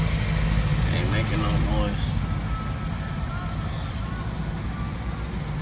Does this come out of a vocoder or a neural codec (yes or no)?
no